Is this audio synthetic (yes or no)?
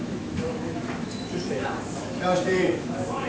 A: yes